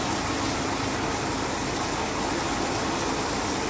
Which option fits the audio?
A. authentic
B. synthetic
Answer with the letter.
A